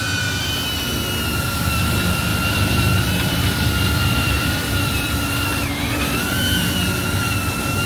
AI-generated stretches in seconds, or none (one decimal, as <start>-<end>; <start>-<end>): 2.3-6.2